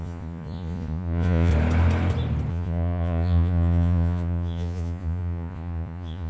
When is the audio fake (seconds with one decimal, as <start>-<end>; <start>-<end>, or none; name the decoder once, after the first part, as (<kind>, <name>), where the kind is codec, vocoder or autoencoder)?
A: 0.0-1.5 (vocoder, Vocos); 2.5-6.3